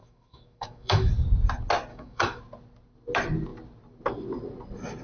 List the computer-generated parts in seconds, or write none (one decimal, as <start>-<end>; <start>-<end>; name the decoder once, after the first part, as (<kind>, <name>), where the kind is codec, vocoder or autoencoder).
0.0-1.1 (autoencoder, DAC-VAE); 1.9-2.4